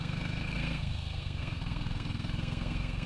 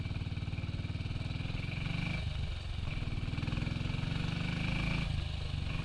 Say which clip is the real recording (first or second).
second